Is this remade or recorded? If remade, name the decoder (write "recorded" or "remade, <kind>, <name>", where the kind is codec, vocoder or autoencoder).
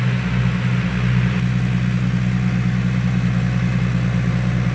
recorded